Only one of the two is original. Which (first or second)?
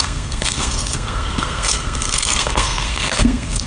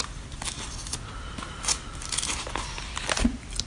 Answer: second